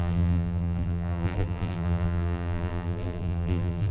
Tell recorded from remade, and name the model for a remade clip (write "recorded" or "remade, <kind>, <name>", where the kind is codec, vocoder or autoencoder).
remade, vocoder, BigVGAN v2